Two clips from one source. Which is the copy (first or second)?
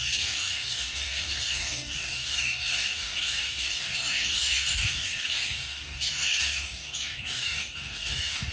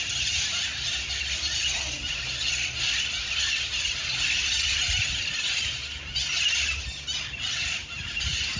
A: first